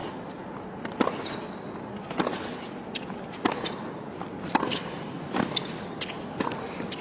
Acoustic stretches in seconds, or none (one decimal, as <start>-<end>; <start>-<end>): 0.0-7.0